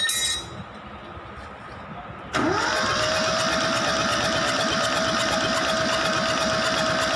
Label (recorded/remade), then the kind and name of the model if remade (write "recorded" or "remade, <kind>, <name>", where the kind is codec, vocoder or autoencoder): recorded